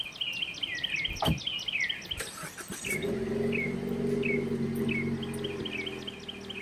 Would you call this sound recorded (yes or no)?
yes